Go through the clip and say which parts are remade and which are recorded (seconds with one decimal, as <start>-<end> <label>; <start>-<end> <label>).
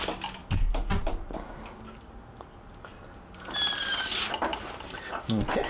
0.0-4.5 recorded; 4.5-5.1 remade; 5.1-5.7 recorded